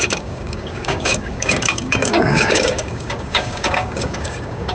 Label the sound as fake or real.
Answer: fake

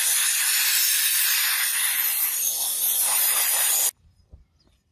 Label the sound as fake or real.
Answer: real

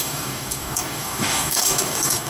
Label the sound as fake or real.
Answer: fake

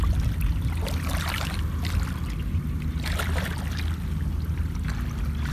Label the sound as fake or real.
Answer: real